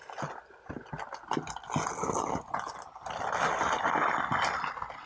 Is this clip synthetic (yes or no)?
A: no